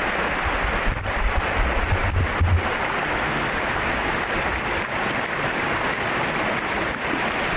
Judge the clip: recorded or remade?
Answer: recorded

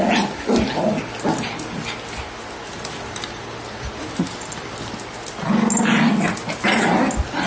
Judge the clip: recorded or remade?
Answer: recorded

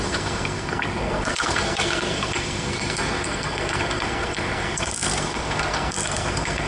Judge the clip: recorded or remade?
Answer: remade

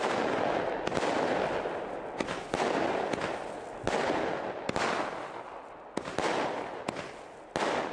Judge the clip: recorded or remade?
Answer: recorded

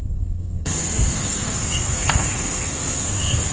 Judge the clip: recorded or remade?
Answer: remade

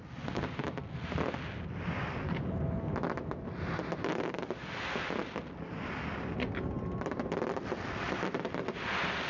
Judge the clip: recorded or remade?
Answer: recorded